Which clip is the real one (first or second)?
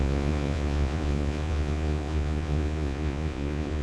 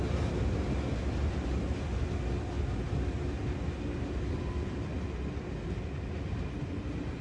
second